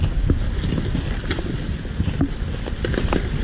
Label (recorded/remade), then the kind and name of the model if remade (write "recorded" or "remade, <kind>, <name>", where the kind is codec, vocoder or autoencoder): recorded